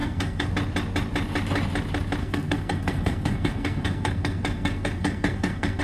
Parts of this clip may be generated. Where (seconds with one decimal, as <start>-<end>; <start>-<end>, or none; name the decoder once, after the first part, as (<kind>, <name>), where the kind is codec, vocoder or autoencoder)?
0.0-0.5 (codec, SNAC); 2.2-5.8